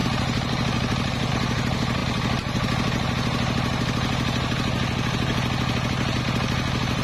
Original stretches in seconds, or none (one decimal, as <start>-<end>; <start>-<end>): 0.0-7.0